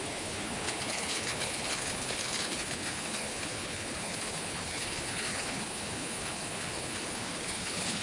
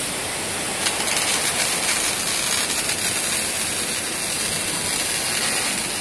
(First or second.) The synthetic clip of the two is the first